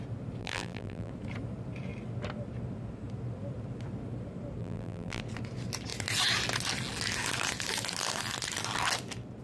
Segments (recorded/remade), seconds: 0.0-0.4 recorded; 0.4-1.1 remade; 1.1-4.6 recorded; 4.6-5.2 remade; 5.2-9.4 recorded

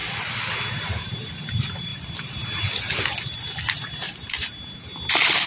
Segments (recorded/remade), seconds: 0.0-0.8 recorded; 0.8-1.9 remade; 1.9-5.1 recorded; 5.1-5.5 remade

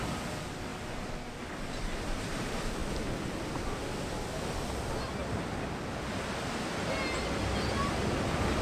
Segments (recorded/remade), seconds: 0.0-8.6 recorded